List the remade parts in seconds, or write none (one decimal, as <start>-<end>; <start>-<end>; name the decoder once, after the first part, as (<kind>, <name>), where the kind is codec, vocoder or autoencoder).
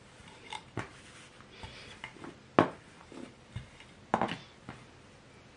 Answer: 0.0-0.9 (vocoder, BigVGAN v2); 3.0-3.6